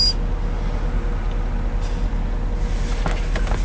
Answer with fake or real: real